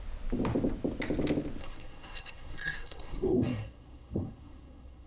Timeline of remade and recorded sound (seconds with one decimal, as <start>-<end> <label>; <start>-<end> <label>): 0.0-1.6 recorded; 1.6-5.1 remade